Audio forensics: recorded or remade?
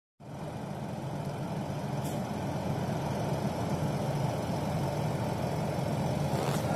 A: recorded